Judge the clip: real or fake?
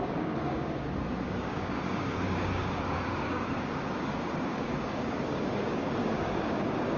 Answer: fake